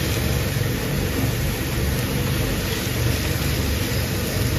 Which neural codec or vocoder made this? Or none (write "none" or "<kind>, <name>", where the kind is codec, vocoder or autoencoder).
none